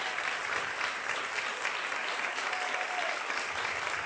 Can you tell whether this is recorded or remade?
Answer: recorded